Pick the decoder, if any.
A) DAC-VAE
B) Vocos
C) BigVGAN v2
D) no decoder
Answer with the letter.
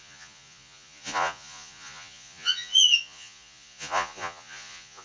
B